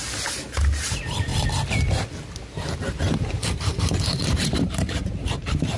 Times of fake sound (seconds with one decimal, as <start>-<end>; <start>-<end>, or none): 0.0-1.3; 2.8-5.8